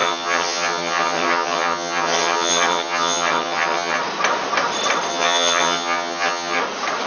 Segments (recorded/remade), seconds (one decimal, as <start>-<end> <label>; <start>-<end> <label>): 0.0-4.0 remade; 4.0-5.1 recorded; 5.1-6.6 remade; 6.6-7.1 recorded